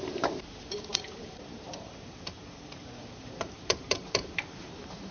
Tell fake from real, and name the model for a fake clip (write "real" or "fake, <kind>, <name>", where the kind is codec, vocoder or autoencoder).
fake, vocoder, BigVGAN v2